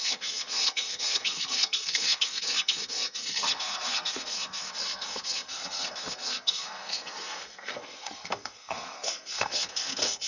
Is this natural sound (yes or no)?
no